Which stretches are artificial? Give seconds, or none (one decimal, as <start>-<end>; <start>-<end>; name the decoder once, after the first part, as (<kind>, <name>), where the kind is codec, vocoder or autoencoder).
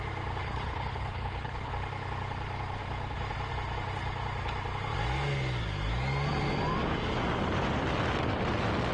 0.4-1.7 (codec, HILCodec)